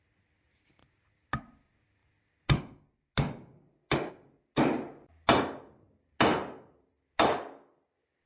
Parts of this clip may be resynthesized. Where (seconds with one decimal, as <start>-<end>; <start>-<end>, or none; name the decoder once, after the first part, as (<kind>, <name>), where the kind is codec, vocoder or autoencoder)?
none